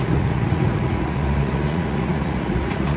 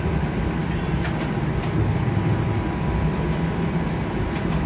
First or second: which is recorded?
second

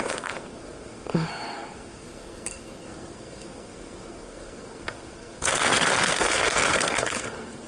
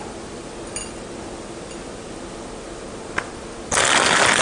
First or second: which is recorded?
second